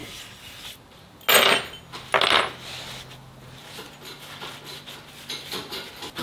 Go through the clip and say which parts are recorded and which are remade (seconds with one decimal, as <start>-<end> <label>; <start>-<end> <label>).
0.0-6.2 recorded